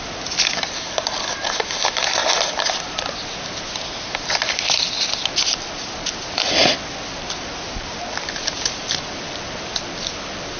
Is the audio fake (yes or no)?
no